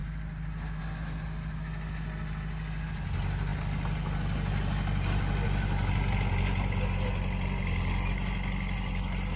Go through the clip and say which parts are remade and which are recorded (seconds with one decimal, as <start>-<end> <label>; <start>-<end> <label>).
0.0-9.4 recorded